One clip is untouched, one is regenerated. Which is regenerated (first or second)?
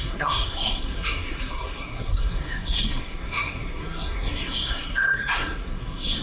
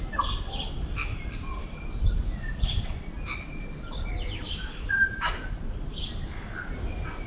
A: first